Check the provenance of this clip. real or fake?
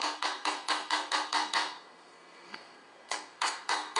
fake